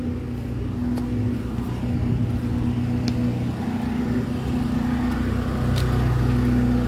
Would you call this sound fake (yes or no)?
no